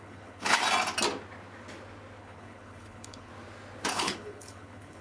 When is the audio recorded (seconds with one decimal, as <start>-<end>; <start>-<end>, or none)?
0.6-2.2; 3.3-3.9